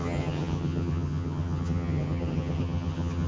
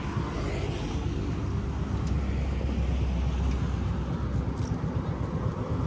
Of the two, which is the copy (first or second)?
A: first